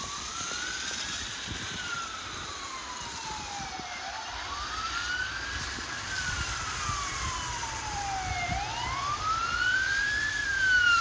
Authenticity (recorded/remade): remade